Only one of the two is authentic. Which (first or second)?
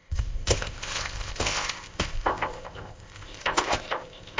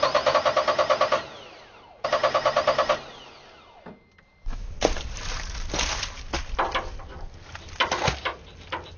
second